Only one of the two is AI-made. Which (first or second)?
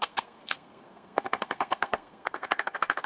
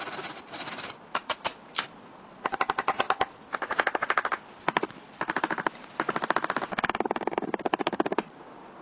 first